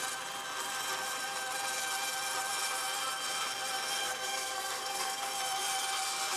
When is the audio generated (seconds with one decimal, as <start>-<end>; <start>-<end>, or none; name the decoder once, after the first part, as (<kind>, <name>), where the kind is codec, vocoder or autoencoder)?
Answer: 4.0-5.3 (codec, SNAC)